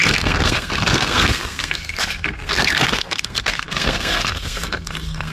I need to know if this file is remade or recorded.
remade